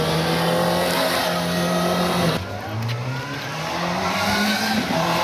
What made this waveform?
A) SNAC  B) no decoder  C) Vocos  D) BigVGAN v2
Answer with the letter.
B